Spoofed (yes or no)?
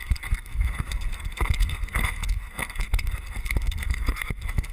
yes